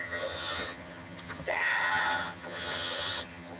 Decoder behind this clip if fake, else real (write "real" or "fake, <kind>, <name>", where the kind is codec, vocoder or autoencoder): fake, vocoder, HiFi-GAN